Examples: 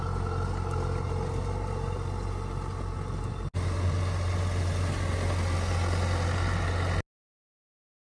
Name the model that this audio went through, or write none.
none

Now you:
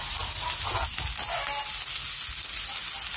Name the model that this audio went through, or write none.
none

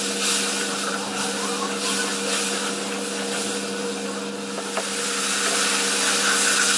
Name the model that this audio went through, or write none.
none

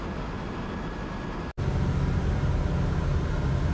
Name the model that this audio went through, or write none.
none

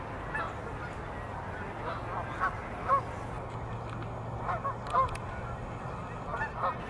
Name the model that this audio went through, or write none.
none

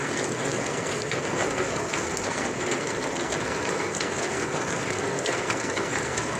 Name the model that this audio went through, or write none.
codec, SNAC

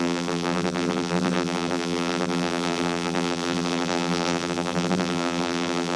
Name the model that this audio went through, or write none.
vocoder, BigVGAN v2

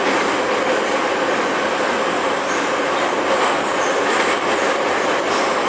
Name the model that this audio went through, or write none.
none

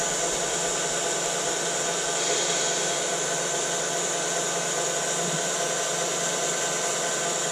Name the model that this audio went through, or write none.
none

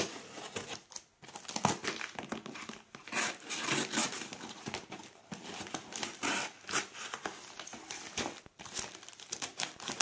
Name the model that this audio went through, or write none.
none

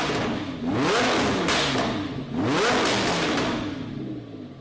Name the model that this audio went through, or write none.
none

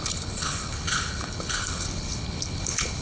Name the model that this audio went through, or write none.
codec, HILCodec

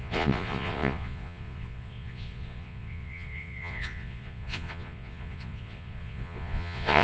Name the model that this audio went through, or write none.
vocoder, Vocos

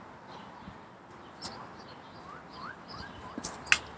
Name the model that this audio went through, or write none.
none